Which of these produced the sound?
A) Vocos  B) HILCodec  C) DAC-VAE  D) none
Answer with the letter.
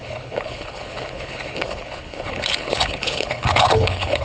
B